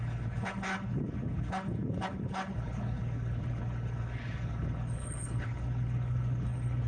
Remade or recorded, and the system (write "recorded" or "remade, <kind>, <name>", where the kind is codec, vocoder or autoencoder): remade, codec, HILCodec